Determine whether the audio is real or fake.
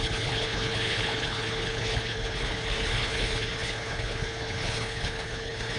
fake